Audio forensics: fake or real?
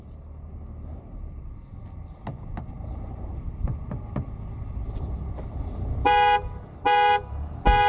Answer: real